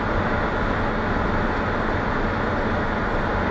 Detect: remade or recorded recorded